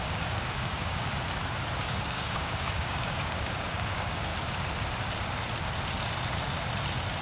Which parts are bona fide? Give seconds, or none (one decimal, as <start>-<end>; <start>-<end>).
1.1-1.8; 4.3-7.2